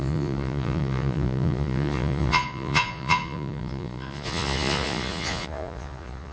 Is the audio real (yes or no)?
no